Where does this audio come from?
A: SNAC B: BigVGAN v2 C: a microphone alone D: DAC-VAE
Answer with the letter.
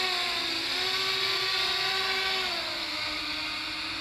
C